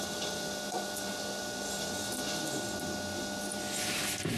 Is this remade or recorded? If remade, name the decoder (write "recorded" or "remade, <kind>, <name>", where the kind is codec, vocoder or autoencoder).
recorded